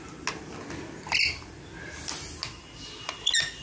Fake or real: real